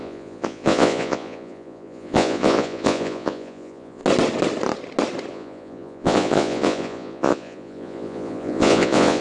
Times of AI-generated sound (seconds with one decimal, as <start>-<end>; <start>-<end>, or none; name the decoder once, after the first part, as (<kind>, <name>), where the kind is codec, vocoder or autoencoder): 0.0-4.0 (vocoder, Vocos); 5.3-9.2